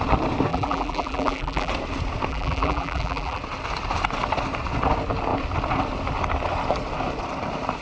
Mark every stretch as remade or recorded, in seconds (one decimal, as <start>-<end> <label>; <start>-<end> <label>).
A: 0.0-0.5 recorded; 0.5-1.7 remade; 1.7-2.3 recorded; 2.3-3.4 remade; 3.4-7.8 recorded